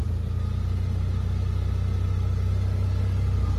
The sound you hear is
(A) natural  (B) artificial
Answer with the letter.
A